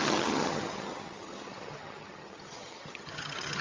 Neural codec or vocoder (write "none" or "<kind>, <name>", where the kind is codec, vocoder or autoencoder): vocoder, HiFi-GAN